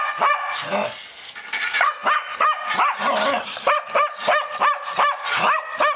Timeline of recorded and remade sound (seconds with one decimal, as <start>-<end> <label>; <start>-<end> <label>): 0.0-6.0 recorded